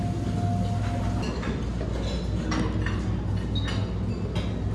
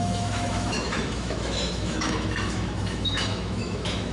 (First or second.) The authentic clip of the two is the first